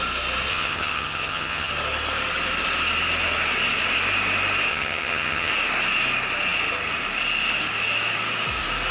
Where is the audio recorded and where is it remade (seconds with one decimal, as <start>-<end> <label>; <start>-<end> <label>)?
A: 0.0-0.5 recorded; 0.5-1.7 remade; 1.7-4.7 recorded; 4.7-5.5 remade; 5.5-8.9 recorded